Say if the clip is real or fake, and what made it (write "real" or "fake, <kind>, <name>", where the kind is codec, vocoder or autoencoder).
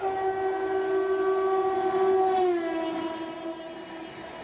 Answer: real